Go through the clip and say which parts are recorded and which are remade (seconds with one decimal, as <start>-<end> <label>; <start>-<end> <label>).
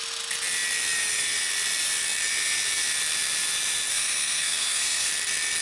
0.0-3.9 recorded; 3.9-5.1 remade; 5.1-5.6 recorded